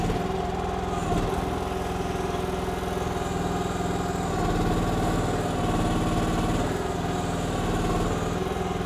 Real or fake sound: real